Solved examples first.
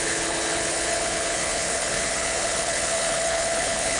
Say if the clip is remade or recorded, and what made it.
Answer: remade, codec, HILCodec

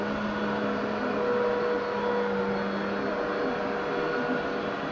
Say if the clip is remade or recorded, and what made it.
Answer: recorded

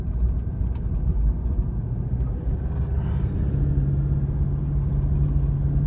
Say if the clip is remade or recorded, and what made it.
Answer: recorded